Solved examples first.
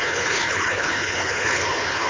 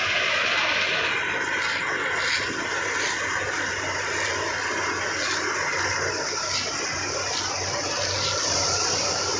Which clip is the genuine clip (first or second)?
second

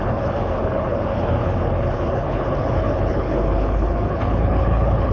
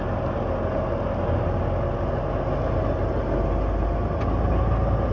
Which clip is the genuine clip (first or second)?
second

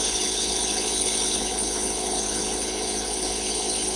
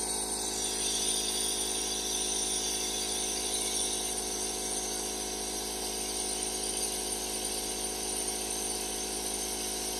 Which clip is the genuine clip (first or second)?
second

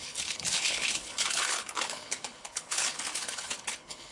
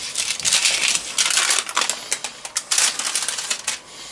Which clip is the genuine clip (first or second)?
second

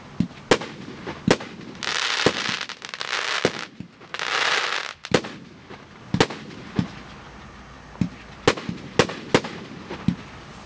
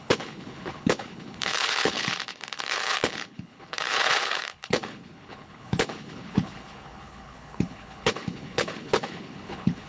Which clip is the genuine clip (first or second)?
first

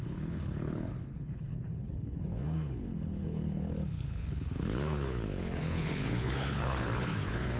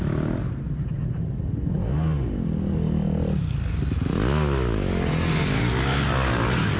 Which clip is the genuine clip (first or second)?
second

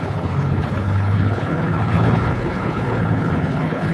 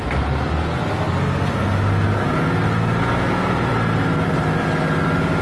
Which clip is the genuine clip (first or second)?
second